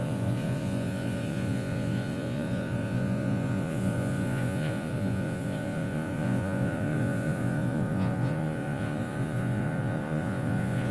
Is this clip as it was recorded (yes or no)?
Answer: no